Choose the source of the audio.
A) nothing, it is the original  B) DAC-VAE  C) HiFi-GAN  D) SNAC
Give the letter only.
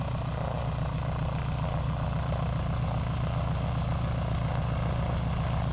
A